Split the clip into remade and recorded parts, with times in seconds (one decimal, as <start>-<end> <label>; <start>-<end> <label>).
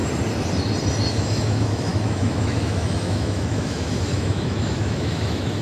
0.0-1.1 recorded; 1.1-5.6 remade